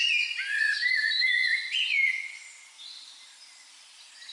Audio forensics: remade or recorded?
recorded